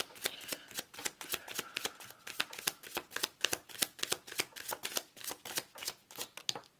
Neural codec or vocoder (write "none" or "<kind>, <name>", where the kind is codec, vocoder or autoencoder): none